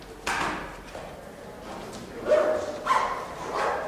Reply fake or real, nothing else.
real